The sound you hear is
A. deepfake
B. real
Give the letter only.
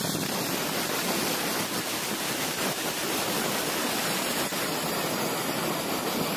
B